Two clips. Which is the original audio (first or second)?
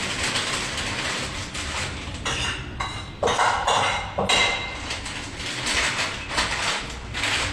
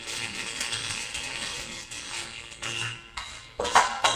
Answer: first